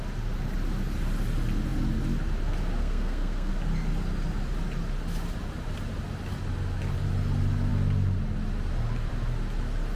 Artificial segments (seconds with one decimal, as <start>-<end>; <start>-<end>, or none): 2.8-3.5